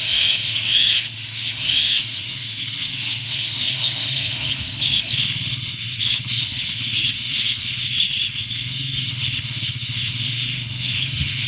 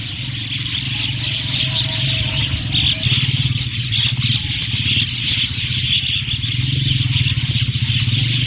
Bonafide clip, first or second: second